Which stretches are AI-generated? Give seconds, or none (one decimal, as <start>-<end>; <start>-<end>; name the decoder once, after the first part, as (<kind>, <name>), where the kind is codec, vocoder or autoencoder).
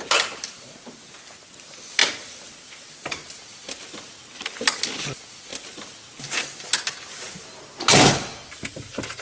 none